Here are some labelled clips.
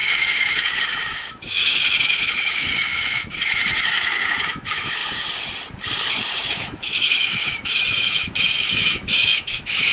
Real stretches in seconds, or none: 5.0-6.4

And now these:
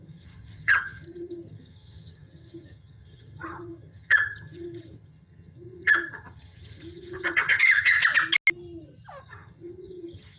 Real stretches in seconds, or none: 8.0-9.2

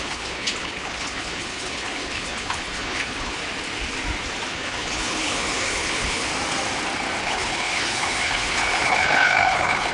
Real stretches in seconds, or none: 3.4-4.5; 6.3-7.2

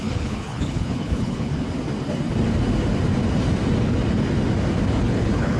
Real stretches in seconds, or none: 1.5-4.9

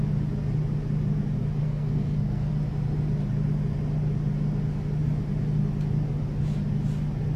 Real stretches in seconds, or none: 0.0-1.6; 2.5-7.4

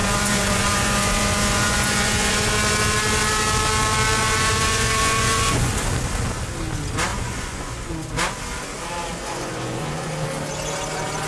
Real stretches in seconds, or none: 2.5-4.2; 5.7-7.1; 7.9-9.1; 10.1-11.3

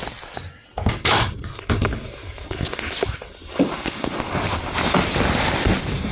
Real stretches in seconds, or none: 0.0-6.1